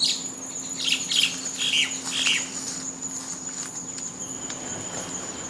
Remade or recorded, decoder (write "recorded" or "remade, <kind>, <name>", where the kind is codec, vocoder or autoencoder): recorded